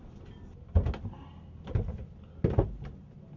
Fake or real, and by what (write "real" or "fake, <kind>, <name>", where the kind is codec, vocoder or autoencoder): real